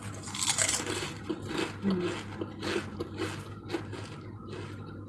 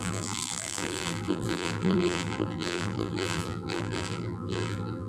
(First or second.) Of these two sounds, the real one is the first